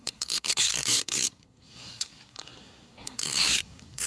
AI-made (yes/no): yes